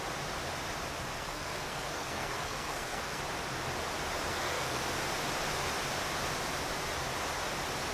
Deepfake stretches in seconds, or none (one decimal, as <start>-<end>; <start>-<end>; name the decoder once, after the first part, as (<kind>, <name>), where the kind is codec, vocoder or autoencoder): 1.1-3.2 (codec, SNAC); 4.3-4.8